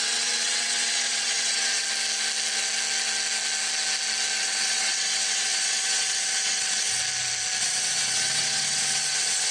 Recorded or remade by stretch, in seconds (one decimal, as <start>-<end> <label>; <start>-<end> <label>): 0.0-1.8 remade; 1.8-4.4 recorded; 4.4-7.0 remade; 7.0-7.6 recorded; 7.6-9.5 remade